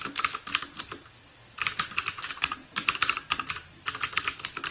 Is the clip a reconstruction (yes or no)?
no